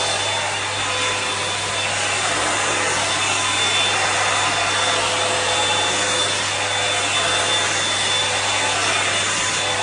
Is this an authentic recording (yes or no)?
yes